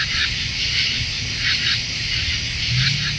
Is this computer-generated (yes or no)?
no